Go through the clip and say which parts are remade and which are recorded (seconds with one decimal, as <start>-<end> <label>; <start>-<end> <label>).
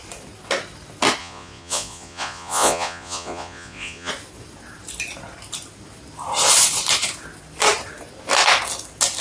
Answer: 0.0-1.2 recorded; 1.2-4.1 remade; 4.1-9.2 recorded